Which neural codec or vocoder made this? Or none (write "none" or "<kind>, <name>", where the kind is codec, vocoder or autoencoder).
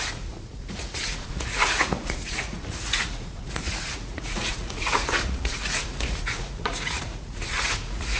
vocoder, Vocos